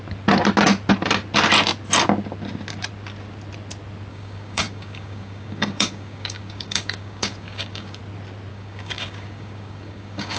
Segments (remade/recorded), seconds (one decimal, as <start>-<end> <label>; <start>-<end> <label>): 0.0-4.1 recorded; 4.1-8.0 remade; 8.0-8.5 recorded; 8.5-10.4 remade